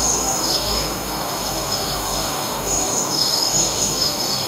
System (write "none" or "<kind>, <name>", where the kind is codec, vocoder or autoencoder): codec, DAC